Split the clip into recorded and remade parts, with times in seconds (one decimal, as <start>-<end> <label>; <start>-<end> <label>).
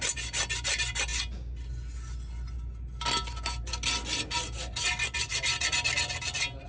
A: 0.0-6.7 recorded